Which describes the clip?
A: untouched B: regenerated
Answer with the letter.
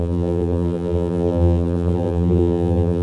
B